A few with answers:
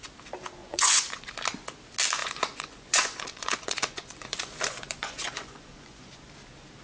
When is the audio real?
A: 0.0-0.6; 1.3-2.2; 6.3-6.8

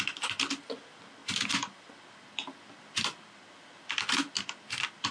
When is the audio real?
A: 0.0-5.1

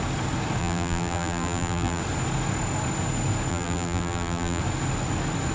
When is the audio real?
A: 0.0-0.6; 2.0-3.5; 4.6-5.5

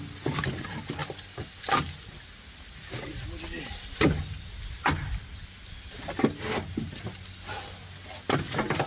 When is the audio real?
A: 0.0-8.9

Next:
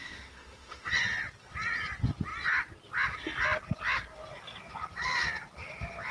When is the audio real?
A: 0.9-6.1

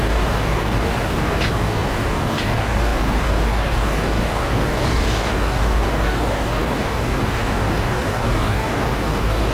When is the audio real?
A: none